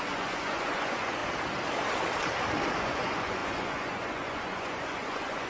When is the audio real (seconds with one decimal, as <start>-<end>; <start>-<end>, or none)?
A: 1.2-2.8